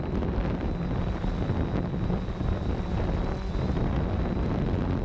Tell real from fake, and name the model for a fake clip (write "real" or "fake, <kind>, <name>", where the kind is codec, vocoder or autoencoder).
real